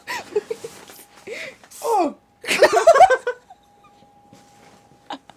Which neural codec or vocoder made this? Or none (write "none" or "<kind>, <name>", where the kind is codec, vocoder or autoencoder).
none